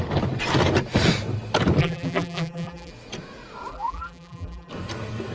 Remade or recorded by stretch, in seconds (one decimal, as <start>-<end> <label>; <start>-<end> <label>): 0.0-1.8 recorded; 1.8-2.9 remade; 2.9-3.7 recorded; 3.7-4.7 remade; 4.7-5.3 recorded